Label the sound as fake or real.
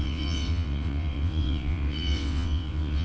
fake